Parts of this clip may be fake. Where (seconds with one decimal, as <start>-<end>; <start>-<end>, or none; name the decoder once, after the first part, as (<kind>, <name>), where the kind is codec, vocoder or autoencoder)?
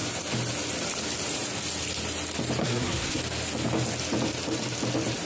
2.6-3.2 (codec, SNAC)